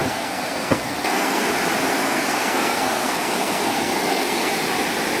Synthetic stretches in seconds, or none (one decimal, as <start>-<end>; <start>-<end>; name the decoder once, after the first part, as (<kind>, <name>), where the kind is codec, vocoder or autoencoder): 0.0-1.5 (codec, SNAC); 1.9-4.5